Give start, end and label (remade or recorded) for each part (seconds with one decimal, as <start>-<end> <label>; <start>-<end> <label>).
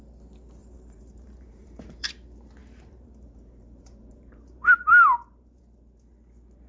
0.0-0.6 recorded; 0.6-2.1 remade; 2.1-2.6 recorded; 2.6-5.6 remade; 5.6-6.7 recorded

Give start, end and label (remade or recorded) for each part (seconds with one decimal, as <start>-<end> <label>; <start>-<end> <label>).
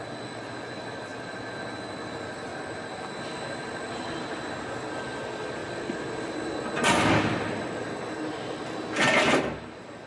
0.0-5.6 recorded; 5.6-8.1 remade; 8.1-10.1 recorded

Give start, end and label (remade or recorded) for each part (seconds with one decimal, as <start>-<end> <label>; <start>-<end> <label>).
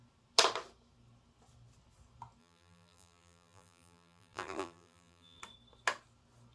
0.0-2.4 recorded; 2.4-5.4 remade; 5.4-6.5 recorded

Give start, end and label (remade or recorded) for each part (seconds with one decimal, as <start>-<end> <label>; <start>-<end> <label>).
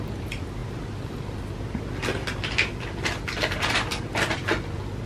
0.0-5.1 recorded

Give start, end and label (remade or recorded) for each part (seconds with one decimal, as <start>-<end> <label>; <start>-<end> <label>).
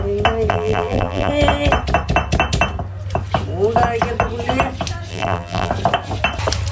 0.0-0.5 recorded; 0.5-1.3 remade; 1.3-5.1 recorded; 5.1-5.7 remade; 5.7-6.7 recorded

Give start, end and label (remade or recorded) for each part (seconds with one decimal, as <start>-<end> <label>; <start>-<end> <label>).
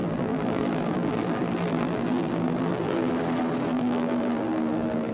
0.0-3.1 remade; 3.1-3.7 recorded; 3.7-5.1 remade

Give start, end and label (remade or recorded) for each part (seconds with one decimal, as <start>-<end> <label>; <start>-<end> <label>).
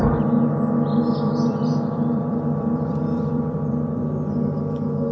0.0-1.5 recorded; 1.5-4.0 remade; 4.0-5.1 recorded